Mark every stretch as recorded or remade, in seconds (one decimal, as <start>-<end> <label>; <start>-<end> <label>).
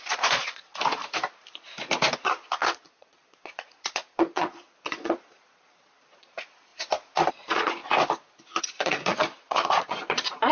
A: 0.0-0.7 remade; 0.7-2.2 recorded; 2.2-6.7 remade; 6.7-7.3 recorded; 7.3-7.8 remade; 7.8-8.6 recorded; 8.6-10.5 remade